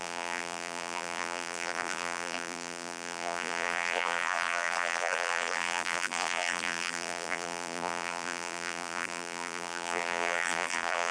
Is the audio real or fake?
fake